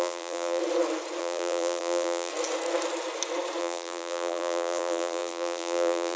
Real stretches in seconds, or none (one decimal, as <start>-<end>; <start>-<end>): 0.6-1.2; 2.3-3.6